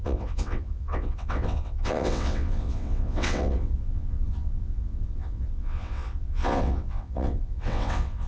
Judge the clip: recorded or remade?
remade